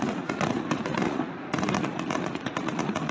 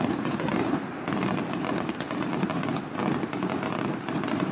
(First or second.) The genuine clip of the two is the second